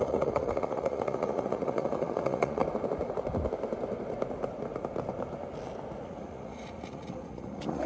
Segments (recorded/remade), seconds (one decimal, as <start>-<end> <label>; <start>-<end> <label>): 0.0-2.6 remade; 2.6-6.0 recorded; 6.0-7.9 remade

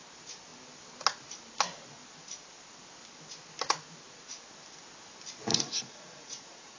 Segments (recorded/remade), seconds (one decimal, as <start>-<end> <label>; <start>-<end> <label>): 0.0-5.5 recorded; 5.5-6.8 remade

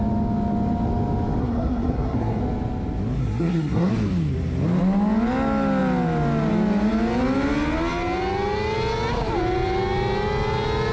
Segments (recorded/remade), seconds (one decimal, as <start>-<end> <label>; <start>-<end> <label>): 0.0-1.4 recorded; 1.4-2.4 remade; 2.4-3.2 recorded; 3.2-3.9 remade; 3.9-10.9 recorded

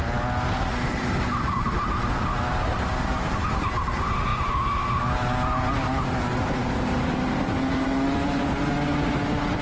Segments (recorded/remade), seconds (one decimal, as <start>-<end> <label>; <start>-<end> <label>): 0.0-9.6 recorded